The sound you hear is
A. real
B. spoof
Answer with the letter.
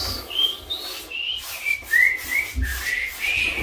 A